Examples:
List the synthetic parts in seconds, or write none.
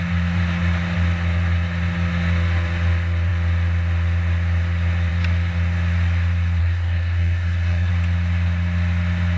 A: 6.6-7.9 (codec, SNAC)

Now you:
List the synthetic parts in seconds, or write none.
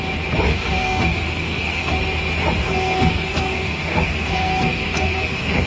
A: 0.5-1.9 (codec, SNAC); 2.6-5.7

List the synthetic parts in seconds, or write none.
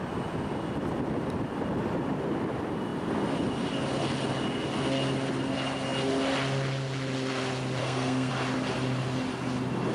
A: 7.8-8.3 (codec, SNAC)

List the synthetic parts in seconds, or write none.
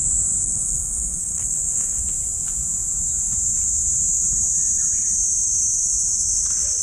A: 0.4-2.0 (codec, SNAC)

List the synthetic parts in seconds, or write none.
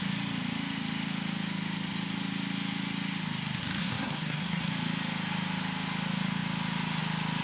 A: 3.8-4.7 (codec, SNAC)